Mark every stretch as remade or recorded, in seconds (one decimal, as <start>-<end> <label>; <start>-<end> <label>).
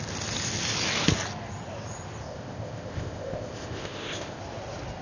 0.0-2.2 recorded; 2.2-4.4 remade; 4.4-5.0 recorded